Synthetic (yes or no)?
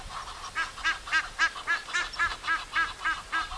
no